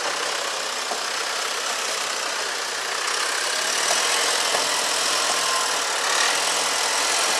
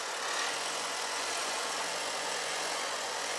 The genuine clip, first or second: first